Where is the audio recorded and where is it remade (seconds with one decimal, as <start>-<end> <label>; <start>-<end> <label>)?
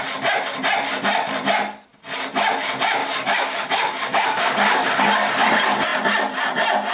0.0-3.0 recorded; 3.0-5.0 remade; 5.0-6.9 recorded